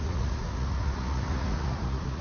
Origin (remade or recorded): remade